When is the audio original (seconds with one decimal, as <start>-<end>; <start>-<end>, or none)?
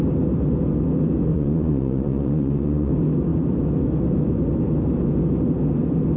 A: 0.0-1.3; 2.9-6.2